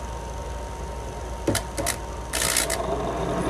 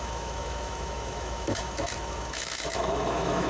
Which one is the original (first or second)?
first